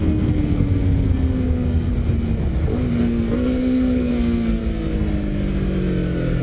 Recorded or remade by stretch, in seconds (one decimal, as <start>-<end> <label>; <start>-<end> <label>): 0.0-1.9 remade; 1.9-3.0 recorded; 3.0-4.6 remade; 4.6-6.4 recorded